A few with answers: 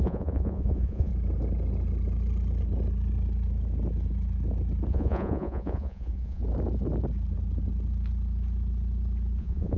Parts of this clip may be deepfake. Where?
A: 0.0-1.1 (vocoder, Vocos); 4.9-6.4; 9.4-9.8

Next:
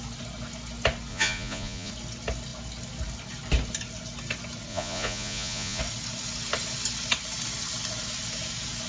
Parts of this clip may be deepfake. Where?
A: 1.1-1.9 (vocoder, Vocos); 4.7-5.8

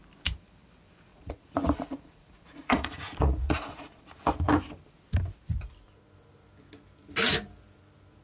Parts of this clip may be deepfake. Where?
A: 1.1-4.0 (vocoder, Vocos)

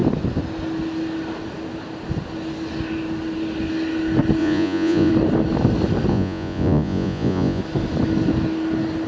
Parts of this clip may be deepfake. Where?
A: 4.4-5.1 (vocoder, Vocos); 6.1-7.6

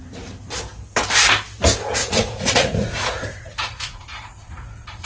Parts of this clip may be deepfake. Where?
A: 2.0-5.1 (vocoder, Vocos)

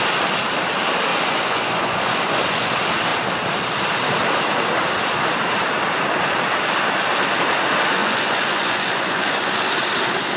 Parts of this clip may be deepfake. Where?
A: 1.1-2.7 (vocoder, Vocos); 8.0-9.7